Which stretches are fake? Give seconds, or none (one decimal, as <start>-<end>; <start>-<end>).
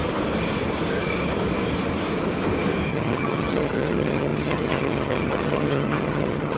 2.9-6.6